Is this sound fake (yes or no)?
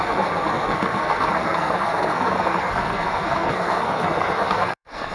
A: yes